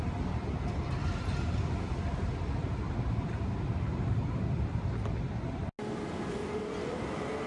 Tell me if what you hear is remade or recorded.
recorded